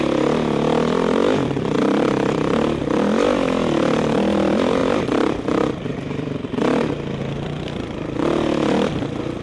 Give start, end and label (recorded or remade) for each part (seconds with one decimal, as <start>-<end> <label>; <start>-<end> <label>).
0.0-4.8 recorded; 4.8-6.9 remade; 6.9-9.4 recorded